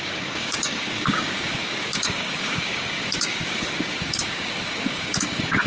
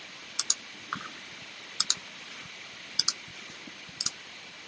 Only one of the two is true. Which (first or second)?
second